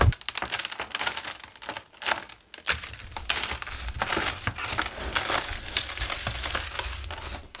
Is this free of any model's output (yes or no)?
yes